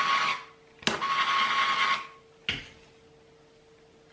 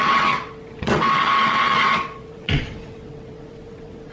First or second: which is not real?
second